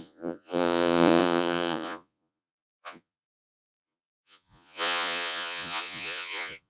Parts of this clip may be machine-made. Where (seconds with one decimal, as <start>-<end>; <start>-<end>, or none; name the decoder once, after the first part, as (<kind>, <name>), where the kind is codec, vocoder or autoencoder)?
0.0-6.7 (vocoder, Vocos)